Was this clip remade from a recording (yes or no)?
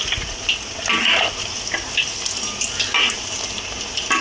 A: no